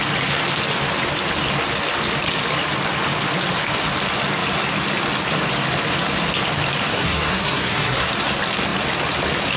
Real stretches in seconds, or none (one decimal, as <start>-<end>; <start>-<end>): 0.0-6.9; 8.1-9.6